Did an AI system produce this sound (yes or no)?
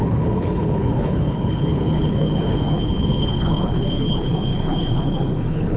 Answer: yes